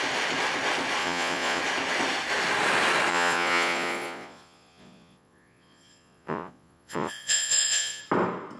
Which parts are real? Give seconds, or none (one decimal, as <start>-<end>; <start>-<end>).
0.0-1.0; 1.6-3.1; 8.0-8.6